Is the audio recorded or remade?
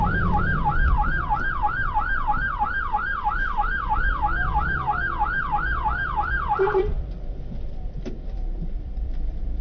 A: remade